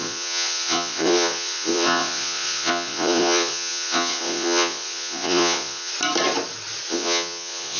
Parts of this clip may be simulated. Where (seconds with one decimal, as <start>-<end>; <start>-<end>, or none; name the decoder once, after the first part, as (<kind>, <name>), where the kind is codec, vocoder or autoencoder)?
0.0-5.9 (vocoder, Vocos); 6.9-7.8